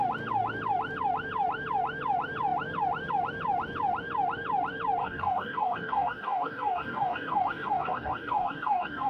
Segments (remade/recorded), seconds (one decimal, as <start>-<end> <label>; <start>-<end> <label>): 0.0-5.0 recorded; 5.0-9.1 remade